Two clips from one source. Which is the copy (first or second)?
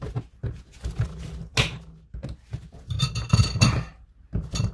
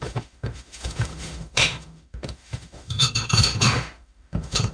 second